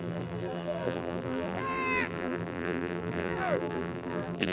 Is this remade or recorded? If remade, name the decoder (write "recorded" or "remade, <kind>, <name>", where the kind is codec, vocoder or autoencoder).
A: remade, vocoder, BigVGAN v2